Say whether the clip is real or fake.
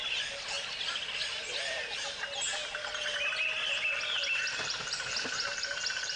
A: real